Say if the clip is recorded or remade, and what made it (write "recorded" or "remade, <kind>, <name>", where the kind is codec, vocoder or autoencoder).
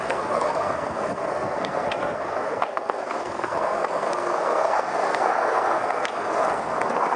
remade, codec, SNAC